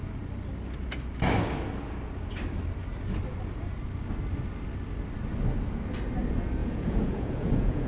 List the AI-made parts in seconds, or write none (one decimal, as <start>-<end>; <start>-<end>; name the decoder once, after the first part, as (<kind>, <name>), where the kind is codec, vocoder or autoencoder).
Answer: 6.6-7.9 (vocoder, Vocos)